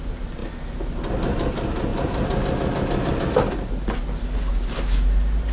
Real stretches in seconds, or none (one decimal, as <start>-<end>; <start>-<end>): 0.0-5.5

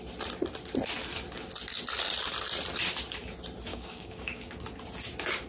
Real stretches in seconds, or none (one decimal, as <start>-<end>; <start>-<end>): 0.0-3.7; 4.6-5.5

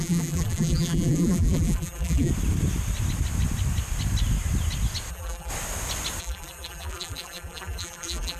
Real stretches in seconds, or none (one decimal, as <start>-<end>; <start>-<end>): 2.3-5.1; 5.5-6.2

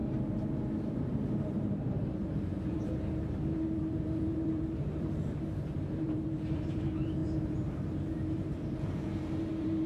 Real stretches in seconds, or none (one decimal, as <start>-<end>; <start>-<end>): none

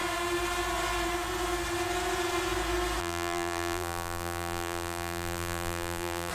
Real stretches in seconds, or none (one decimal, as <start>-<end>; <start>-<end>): 0.0-3.0